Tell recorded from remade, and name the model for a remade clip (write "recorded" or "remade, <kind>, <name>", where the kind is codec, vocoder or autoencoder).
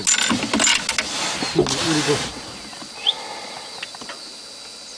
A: recorded